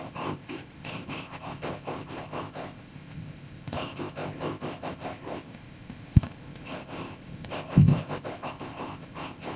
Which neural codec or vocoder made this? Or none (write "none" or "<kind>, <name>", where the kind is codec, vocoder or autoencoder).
codec, ZipCodec